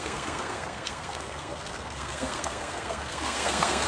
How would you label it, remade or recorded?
remade